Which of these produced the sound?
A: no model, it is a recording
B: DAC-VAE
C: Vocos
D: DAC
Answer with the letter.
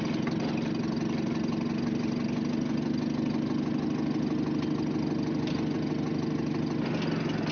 A